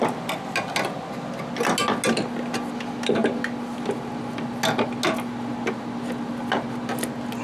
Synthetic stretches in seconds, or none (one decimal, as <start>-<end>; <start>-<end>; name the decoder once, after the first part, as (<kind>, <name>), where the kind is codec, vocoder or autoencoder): none